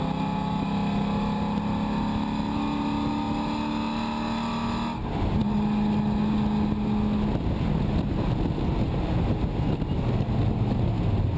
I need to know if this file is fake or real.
real